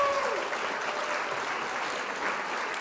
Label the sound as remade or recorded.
recorded